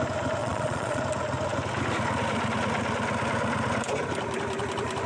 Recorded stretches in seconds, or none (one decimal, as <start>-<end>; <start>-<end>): 0.0-0.4; 1.0-5.1